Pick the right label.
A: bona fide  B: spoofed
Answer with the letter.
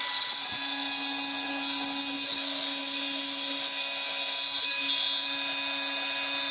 A